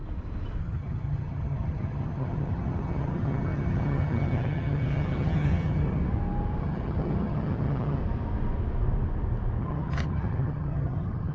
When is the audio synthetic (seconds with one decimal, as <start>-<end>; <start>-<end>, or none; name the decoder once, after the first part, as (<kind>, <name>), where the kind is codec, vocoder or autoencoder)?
0.6-6.0 (vocoder, HiFi-GAN); 6.6-8.0; 9.6-11.3

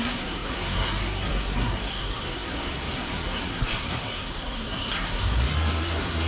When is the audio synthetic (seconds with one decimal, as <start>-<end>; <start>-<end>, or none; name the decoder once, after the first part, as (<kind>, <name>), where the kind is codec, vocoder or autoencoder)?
0.0-6.3 (codec, SNAC)

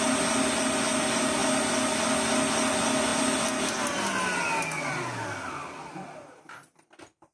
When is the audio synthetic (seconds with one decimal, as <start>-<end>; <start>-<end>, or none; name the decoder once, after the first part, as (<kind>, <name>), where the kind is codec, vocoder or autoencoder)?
none

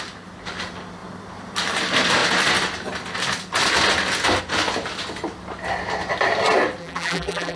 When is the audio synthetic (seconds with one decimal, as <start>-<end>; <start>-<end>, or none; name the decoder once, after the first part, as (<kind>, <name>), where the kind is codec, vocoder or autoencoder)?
6.8-7.6 (vocoder, BigVGAN v2)

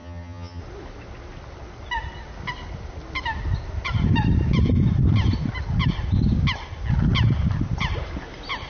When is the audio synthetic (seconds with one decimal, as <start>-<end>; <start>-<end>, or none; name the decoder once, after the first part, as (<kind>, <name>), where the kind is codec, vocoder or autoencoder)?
0.0-0.6 (vocoder, HiFi-GAN)

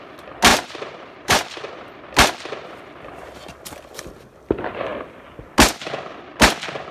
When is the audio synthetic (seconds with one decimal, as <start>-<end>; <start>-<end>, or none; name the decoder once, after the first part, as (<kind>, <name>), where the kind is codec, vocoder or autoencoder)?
0.5-1.7 (vocoder, BigVGAN v2)